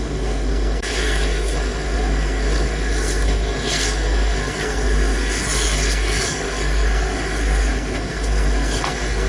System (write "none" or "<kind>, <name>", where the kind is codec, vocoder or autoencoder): codec, SNAC